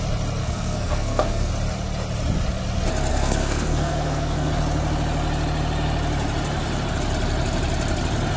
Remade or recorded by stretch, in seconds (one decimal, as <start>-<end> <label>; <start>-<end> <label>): 0.0-0.4 recorded; 0.4-1.5 remade; 1.5-3.1 recorded; 3.1-4.5 remade; 4.5-8.4 recorded